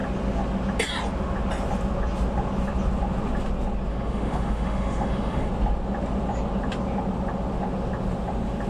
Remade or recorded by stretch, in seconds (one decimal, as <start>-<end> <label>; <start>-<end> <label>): 0.0-3.9 recorded; 3.9-5.5 remade; 5.5-8.7 recorded